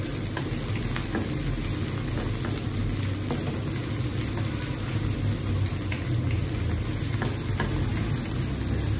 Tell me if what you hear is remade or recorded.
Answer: recorded